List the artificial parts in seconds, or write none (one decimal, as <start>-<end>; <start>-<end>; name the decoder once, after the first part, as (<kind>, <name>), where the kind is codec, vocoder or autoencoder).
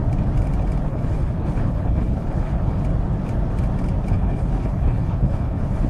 0.9-2.8 (codec, HILCodec); 4.1-5.9